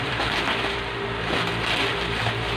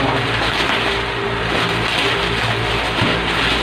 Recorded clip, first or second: second